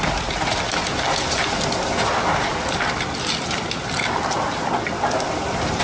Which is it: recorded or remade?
recorded